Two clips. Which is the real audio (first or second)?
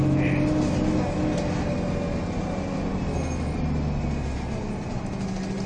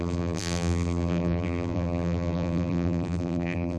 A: first